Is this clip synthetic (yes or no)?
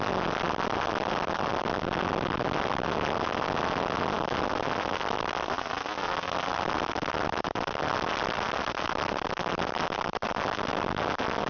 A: no